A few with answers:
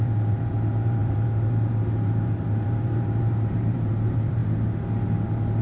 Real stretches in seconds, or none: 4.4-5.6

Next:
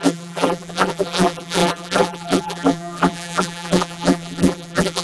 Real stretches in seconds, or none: none

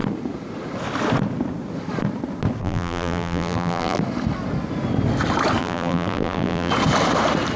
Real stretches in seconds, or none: 0.0-2.6; 4.0-5.6; 6.7-7.6

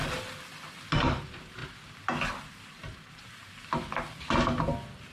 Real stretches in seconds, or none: 0.0-5.1